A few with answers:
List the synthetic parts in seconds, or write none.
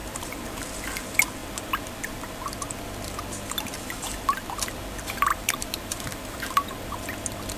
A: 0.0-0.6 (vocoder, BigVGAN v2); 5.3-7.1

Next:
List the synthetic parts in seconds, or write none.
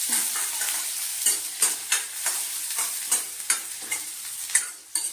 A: 1.1-4.2 (vocoder, BigVGAN v2)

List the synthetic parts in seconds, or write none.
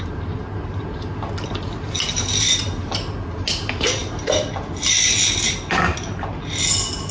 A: none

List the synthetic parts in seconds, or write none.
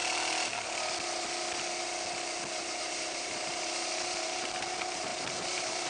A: 2.8-5.9 (vocoder, BigVGAN v2)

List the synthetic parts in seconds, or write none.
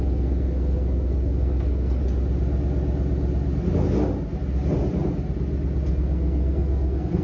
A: 0.0-2.0 (codec, SNAC); 5.9-7.2